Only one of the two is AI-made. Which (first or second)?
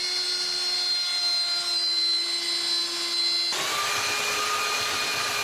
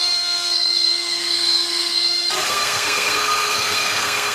second